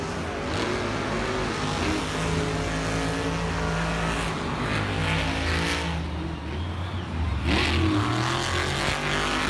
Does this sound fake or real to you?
real